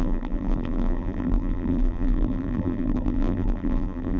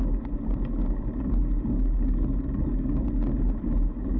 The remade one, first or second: first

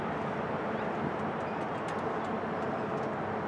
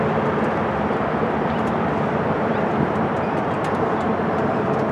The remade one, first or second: second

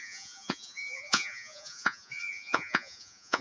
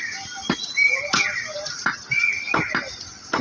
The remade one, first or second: first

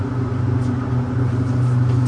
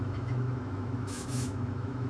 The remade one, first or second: second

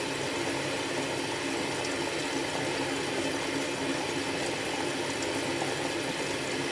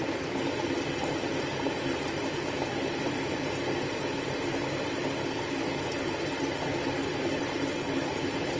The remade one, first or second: second